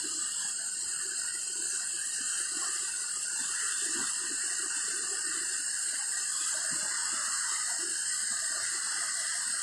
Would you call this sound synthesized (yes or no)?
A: yes